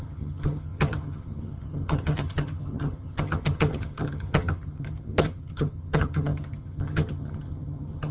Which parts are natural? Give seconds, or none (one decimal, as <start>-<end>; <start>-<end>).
none